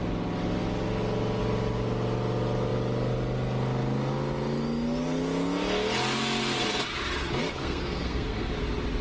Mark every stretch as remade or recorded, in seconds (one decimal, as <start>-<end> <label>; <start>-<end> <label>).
0.0-7.6 recorded; 7.6-8.5 remade; 8.5-9.0 recorded